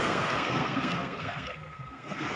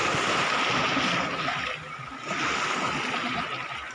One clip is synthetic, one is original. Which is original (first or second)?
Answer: second